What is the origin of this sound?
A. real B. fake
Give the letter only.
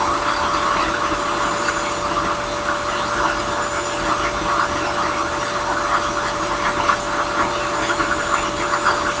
A